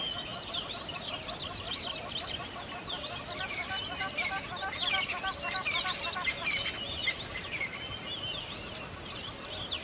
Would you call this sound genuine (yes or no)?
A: yes